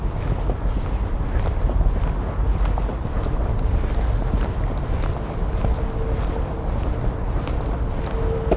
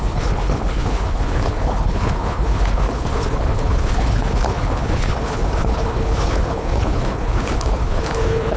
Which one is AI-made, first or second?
second